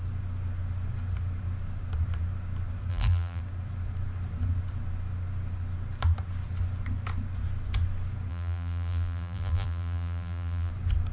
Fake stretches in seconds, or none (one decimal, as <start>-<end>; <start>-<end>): 2.9-3.4; 8.3-10.7